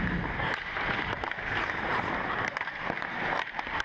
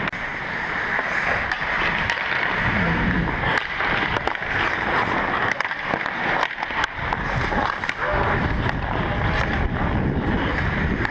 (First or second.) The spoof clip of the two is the first